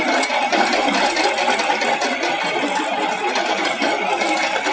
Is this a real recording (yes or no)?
yes